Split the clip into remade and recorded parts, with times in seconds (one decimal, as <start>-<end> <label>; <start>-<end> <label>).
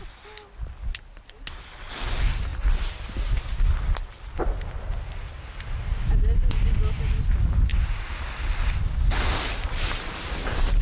0.0-10.8 recorded